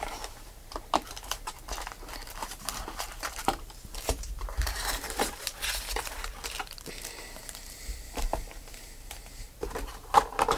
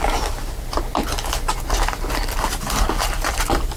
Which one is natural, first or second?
second